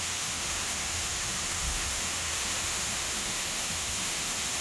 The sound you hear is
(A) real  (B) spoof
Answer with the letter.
B